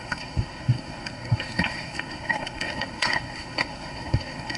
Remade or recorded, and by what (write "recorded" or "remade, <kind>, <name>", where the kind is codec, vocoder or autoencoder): remade, codec, SNAC